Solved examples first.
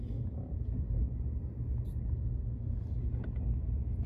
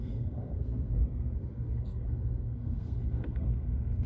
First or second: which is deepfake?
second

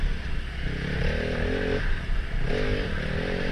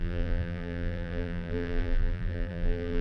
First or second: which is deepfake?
second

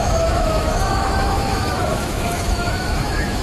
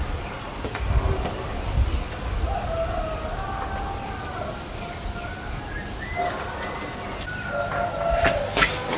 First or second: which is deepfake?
first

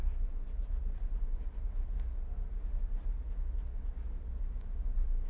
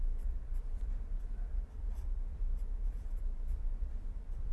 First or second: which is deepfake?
second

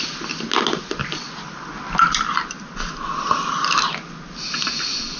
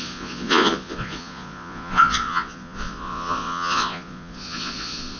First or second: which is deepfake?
second